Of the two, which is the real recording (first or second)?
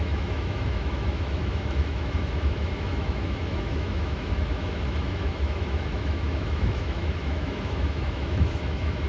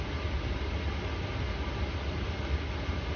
second